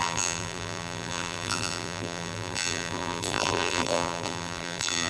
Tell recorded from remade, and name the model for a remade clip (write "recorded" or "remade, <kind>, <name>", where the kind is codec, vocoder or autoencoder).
remade, vocoder, BigVGAN v2